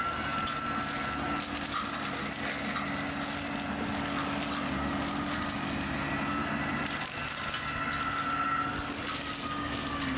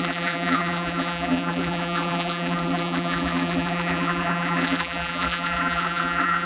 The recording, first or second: first